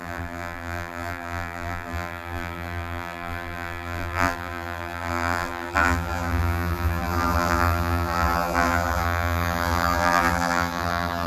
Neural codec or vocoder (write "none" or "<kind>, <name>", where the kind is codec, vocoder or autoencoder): vocoder, BigVGAN v2